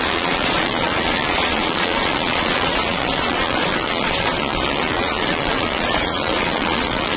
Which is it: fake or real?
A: fake